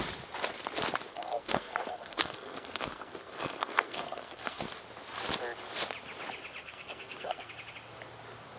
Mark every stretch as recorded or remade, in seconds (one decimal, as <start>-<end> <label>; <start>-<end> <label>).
0.0-1.1 recorded; 1.1-4.7 remade; 4.7-6.6 recorded; 6.6-7.5 remade; 7.5-8.6 recorded